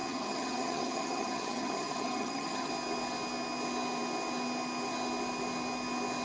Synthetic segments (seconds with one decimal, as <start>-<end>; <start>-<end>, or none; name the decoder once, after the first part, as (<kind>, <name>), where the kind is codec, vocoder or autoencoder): 0.0-2.7 (vocoder, HiFi-GAN)